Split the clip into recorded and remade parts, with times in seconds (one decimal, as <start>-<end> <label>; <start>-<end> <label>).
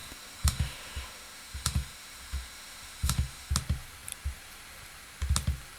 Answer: 0.0-3.5 remade; 3.5-5.8 recorded